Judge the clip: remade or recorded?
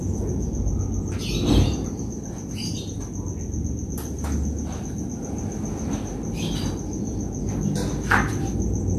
recorded